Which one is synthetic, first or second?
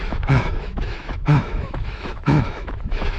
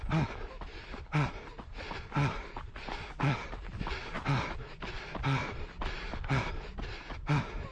first